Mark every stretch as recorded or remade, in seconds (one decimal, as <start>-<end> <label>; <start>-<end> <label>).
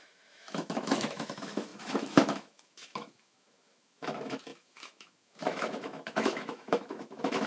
0.0-7.5 remade